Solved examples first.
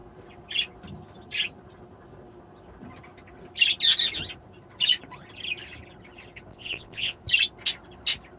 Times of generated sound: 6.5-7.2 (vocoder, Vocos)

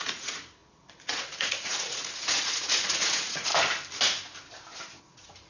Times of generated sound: 0.0-3.5 (vocoder, Vocos); 5.0-5.5

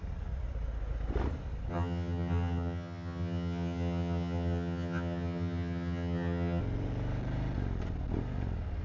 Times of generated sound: 1.7-6.6 (vocoder, HiFi-GAN)

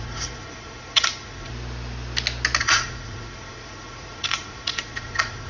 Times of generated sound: 0.0-1.5 (vocoder, Vocos); 2.6-5.5

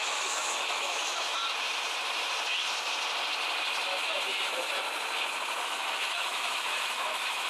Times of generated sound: 0.0-1.4 (autoencoder, DAC-VAE); 5.6-7.5